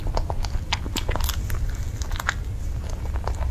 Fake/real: real